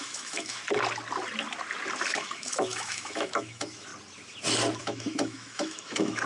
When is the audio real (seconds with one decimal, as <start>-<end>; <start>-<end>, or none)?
0.6-2.1; 3.9-4.8